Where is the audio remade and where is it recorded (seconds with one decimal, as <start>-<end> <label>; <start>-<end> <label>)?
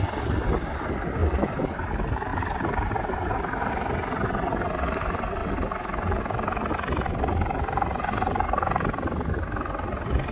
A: 0.0-1.2 recorded; 1.2-1.9 remade; 1.9-2.3 recorded; 2.3-3.7 remade; 3.7-10.3 recorded